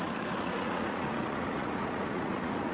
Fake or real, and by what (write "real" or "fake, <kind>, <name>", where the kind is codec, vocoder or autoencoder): fake, vocoder, Vocos